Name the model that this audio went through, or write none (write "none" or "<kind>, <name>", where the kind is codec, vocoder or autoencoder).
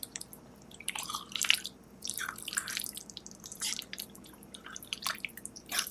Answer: vocoder, BigVGAN v2